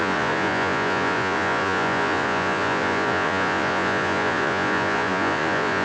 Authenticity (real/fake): fake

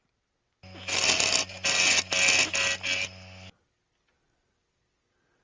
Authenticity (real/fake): real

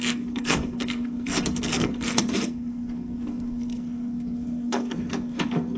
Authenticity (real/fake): fake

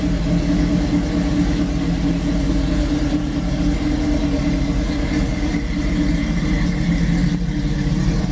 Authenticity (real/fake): real